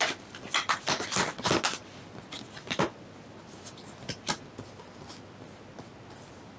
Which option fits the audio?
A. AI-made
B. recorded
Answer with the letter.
B